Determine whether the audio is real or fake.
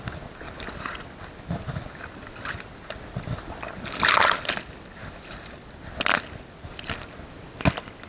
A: real